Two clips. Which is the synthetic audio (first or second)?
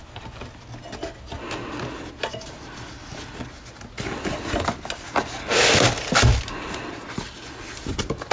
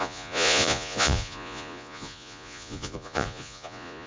second